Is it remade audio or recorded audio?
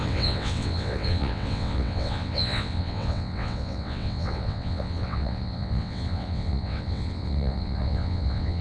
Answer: remade